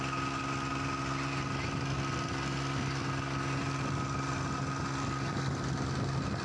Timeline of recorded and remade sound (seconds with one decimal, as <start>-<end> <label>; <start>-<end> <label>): 0.0-6.4 recorded